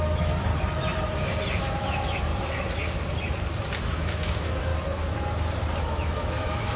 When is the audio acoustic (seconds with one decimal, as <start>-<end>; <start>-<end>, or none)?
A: 0.5-1.6; 2.3-3.8; 4.7-5.8